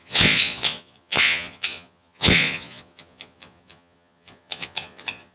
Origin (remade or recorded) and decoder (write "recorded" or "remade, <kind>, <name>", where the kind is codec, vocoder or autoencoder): remade, vocoder, Vocos